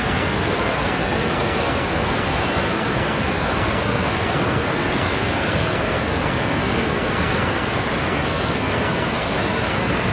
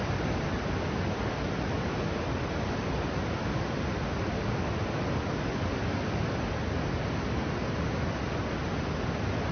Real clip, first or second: second